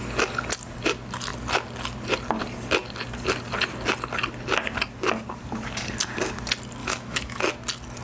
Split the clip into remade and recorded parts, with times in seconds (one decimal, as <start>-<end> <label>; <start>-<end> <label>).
0.0-6.8 recorded; 6.8-7.4 remade; 7.4-8.0 recorded